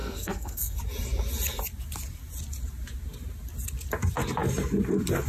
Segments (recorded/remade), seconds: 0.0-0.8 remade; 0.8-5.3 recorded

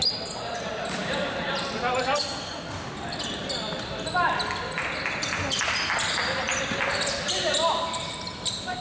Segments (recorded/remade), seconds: 0.0-8.8 recorded

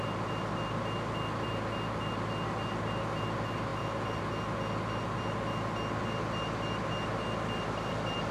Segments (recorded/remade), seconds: 0.0-8.3 recorded